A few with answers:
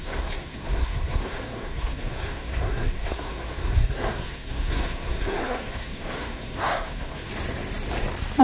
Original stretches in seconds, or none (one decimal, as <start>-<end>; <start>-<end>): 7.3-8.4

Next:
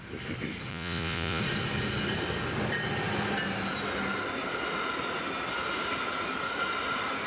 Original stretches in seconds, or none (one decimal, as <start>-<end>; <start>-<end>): 0.0-0.7; 1.4-7.3

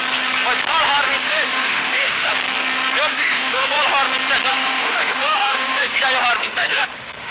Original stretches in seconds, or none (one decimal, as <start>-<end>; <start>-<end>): 0.0-1.2; 2.3-3.1; 3.8-4.5; 6.0-6.4